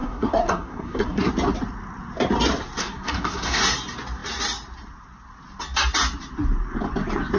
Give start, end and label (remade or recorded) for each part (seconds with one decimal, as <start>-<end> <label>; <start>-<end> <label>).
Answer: 0.0-1.3 remade; 1.3-2.8 recorded; 2.8-3.6 remade; 3.6-7.4 recorded